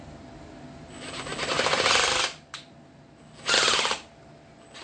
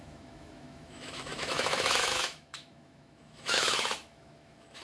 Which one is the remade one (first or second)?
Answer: second